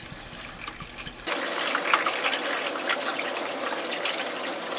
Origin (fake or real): real